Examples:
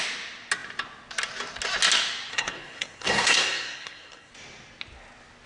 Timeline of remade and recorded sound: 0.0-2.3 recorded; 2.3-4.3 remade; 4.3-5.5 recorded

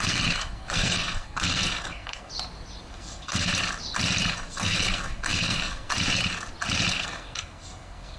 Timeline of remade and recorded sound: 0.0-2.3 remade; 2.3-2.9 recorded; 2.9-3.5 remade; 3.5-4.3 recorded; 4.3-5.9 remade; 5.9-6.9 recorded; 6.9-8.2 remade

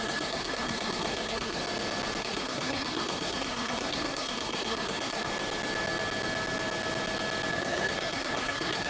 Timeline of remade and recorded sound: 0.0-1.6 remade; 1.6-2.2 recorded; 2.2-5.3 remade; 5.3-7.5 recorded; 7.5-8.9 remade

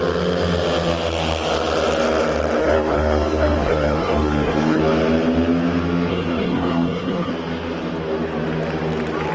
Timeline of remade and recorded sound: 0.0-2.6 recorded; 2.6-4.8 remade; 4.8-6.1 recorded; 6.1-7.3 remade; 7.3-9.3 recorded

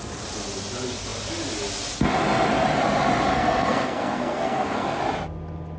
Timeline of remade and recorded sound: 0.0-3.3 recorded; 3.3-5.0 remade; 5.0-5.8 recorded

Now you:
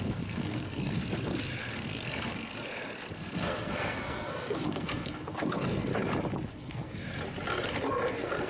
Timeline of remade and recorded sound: 0.0-1.0 remade; 1.0-1.7 recorded; 1.7-2.5 remade; 2.5-3.1 recorded; 3.1-5.9 remade; 5.9-6.5 recorded; 6.5-7.0 remade; 7.0-8.1 recorded; 8.1-8.5 remade